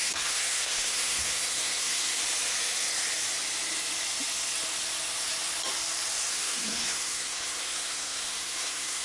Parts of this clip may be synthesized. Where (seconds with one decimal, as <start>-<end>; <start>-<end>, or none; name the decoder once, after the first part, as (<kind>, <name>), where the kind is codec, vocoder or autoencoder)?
0.0-2.2 (codec, SNAC); 6.3-9.0